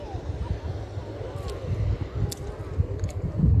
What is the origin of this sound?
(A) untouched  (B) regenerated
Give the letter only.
A